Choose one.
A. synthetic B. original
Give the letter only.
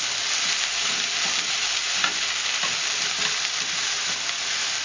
B